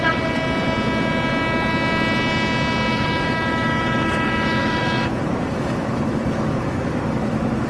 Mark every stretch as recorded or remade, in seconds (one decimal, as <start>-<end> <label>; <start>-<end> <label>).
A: 0.0-2.9 recorded; 2.9-7.7 remade